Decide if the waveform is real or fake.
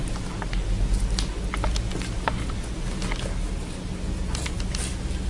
real